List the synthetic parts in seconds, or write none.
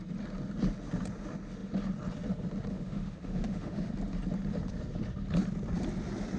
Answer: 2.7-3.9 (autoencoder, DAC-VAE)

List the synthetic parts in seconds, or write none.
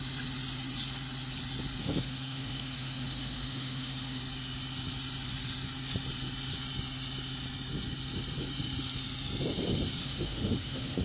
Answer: 1.8-4.2 (autoencoder, DAC-VAE); 10.0-11.0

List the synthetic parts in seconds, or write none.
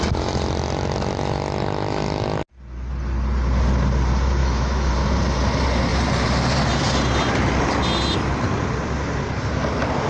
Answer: 4.4-4.9 (autoencoder, DAC-VAE)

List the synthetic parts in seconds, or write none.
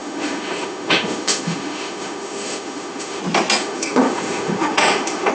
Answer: 0.0-3.2 (autoencoder, DAC-VAE); 3.6-5.3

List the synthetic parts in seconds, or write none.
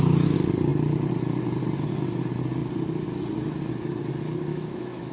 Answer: 4.5-5.1 (autoencoder, DAC-VAE)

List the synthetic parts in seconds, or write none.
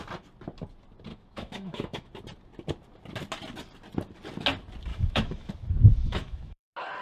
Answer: 1.1-2.1 (autoencoder, DAC-VAE); 4.9-5.5; 6.0-6.6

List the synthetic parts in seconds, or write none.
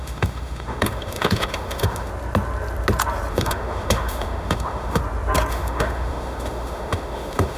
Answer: 0.0-2.1 (autoencoder, DAC-VAE); 3.3-5.0; 5.5-7.6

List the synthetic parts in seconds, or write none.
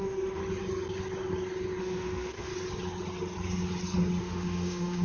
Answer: 0.0-0.4 (autoencoder, DAC-VAE); 1.8-2.5; 4.2-5.0